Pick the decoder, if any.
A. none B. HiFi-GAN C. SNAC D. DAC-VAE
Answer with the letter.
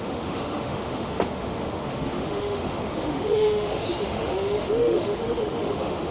D